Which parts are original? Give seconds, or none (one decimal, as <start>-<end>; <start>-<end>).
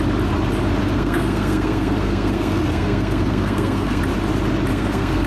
0.0-0.8; 4.0-4.7